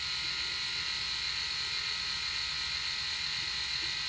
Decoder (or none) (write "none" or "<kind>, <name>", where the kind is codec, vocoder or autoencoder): none